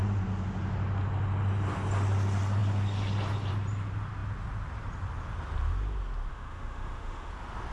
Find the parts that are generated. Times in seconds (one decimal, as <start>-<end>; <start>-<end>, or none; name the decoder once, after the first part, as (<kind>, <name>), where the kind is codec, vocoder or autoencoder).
6.3-7.3 (autoencoder, DAC-VAE)